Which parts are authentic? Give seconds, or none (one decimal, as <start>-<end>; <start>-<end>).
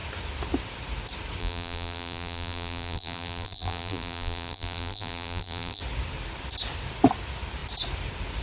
0.0-1.4; 5.8-8.4